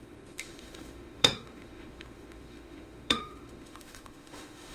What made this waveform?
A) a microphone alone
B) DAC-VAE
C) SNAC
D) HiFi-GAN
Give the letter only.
B